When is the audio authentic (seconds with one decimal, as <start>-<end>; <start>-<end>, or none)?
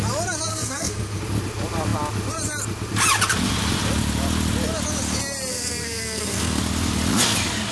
0.0-0.5; 1.2-5.5; 6.6-7.7